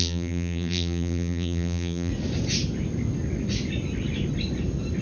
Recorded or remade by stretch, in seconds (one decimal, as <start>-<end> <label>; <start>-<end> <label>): 0.0-2.1 remade; 2.1-5.0 recorded